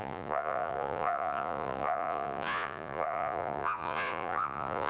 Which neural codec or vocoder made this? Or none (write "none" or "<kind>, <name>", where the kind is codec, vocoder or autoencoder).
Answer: vocoder, Vocos